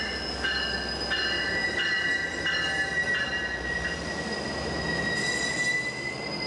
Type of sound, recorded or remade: recorded